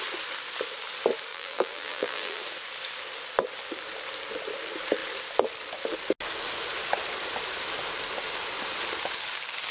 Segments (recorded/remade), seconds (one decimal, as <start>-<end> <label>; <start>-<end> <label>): 0.0-1.3 recorded; 1.3-2.4 remade; 2.4-9.7 recorded